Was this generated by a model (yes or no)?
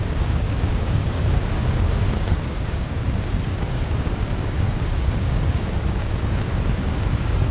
yes